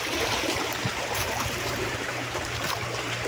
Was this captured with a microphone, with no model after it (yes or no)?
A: no